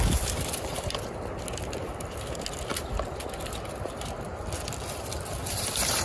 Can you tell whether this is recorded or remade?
recorded